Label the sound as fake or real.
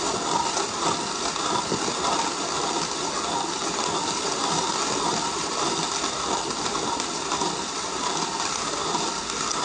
real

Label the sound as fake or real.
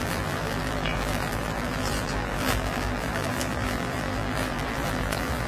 fake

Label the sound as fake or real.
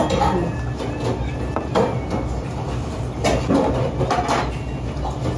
real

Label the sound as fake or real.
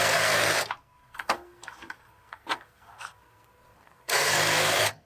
fake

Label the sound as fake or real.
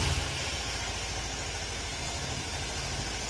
real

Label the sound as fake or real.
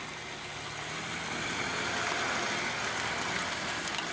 real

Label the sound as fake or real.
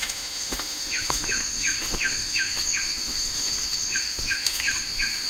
fake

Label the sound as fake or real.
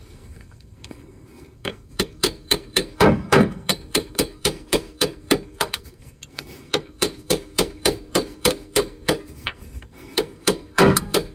fake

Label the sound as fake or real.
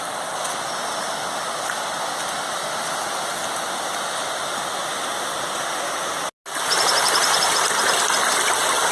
real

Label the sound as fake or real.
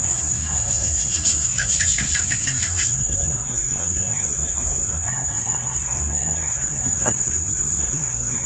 fake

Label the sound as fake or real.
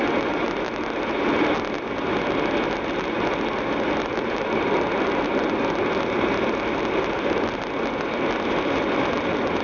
real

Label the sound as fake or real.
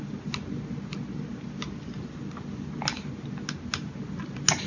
real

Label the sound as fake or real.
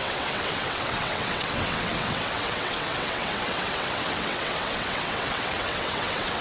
fake